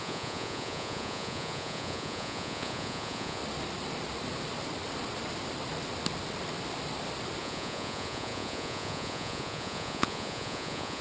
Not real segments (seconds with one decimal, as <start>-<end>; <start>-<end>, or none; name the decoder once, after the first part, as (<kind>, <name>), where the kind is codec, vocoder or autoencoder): 0.0-3.4 (vocoder, Vocos); 7.4-11.0